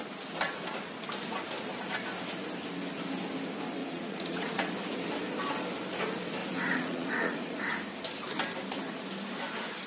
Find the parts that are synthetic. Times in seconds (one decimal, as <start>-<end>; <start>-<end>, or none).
3.8-4.7; 6.4-7.7